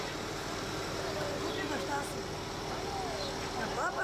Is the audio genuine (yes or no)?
yes